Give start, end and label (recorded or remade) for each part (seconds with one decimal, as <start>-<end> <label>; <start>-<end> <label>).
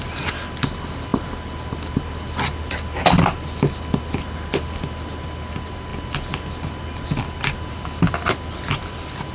0.0-9.3 recorded